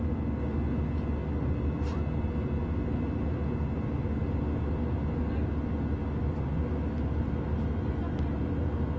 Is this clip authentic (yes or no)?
yes